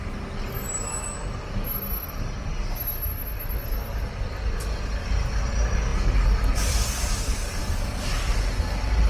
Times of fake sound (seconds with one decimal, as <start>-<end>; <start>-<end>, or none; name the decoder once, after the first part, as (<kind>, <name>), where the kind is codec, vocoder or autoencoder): none